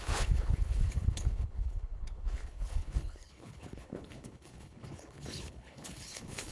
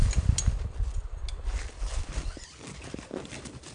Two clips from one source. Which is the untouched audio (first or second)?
second